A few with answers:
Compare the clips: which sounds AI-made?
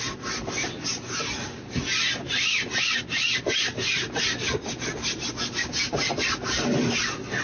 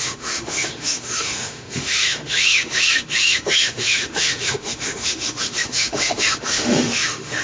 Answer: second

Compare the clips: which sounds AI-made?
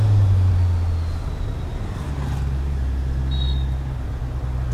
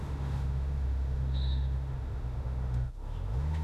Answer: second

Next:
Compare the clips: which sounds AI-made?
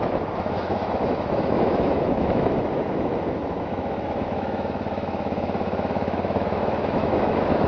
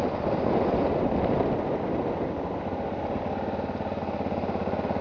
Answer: first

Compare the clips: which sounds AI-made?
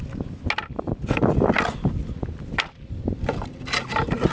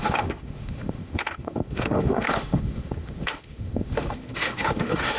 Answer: second